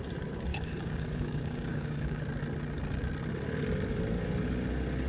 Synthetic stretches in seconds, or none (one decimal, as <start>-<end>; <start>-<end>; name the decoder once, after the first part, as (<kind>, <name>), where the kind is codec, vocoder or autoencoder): 0.5-2.2 (codec, DAC)